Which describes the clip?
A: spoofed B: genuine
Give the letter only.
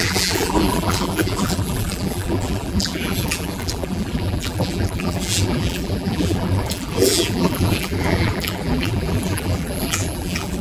A